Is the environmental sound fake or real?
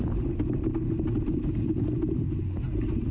real